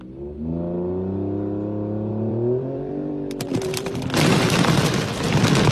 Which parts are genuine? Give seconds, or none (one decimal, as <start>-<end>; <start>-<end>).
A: 0.0-2.1; 5.1-5.7

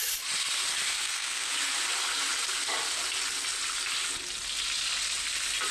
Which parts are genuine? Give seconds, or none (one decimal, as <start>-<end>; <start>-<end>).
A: 0.0-0.9; 1.5-5.7

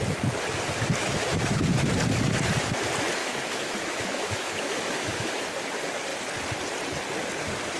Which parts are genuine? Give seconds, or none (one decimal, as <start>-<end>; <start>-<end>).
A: 0.0-1.0; 1.6-3.2; 5.4-7.8

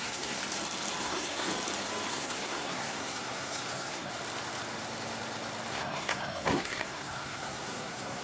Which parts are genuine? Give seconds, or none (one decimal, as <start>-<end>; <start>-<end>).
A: 0.4-1.0; 1.5-2.1; 4.1-5.7

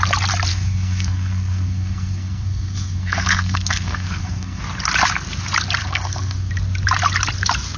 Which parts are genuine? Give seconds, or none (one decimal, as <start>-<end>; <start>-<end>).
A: 0.0-0.5; 4.6-5.8; 6.5-7.8

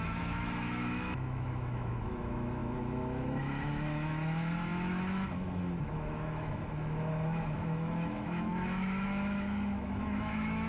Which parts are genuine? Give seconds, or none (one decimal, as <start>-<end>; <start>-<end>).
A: none

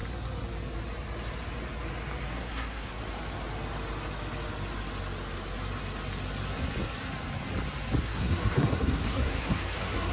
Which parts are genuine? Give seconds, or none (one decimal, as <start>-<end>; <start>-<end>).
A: 0.0-2.3; 3.0-8.0

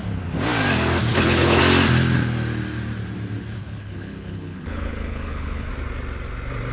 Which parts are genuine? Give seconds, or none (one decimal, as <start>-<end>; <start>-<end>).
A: 0.0-1.1; 1.6-3.6; 5.7-6.7